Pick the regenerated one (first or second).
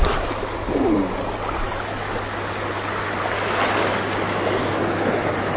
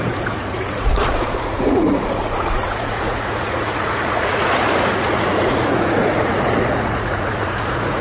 second